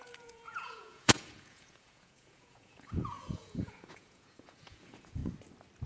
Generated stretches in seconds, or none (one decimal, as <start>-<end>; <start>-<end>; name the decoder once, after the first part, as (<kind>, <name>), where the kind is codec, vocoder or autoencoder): 0.0-5.2 (vocoder, Vocos)